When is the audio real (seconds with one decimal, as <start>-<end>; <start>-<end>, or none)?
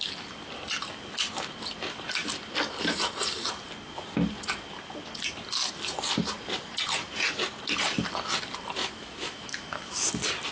0.0-8.8; 10.1-10.5